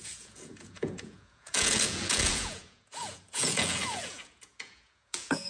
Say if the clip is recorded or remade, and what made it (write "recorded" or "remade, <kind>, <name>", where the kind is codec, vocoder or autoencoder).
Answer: remade, vocoder, Vocos